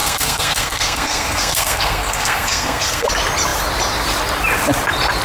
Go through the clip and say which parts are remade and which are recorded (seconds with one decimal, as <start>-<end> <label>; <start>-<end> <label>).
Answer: 0.0-3.1 remade; 3.1-5.2 recorded